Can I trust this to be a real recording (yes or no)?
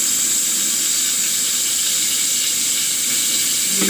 yes